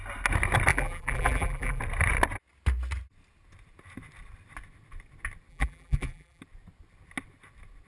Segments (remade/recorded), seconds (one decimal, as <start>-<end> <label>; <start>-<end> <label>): 0.0-0.7 recorded; 0.7-1.8 remade; 1.8-5.5 recorded; 5.5-6.4 remade; 6.4-7.9 recorded